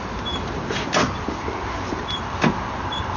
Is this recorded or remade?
recorded